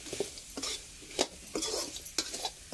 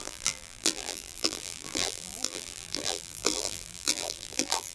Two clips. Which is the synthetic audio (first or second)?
second